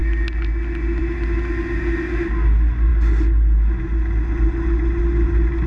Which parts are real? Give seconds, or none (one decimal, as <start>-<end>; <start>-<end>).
0.0-5.7